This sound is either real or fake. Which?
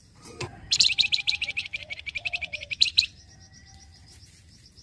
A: fake